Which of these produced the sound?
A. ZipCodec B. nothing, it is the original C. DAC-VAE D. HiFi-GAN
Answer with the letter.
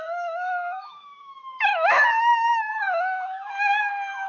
C